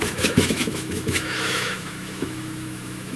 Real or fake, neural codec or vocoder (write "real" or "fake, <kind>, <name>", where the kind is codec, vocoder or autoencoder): fake, autoencoder, DAC-VAE